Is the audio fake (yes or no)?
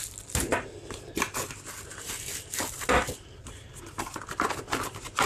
no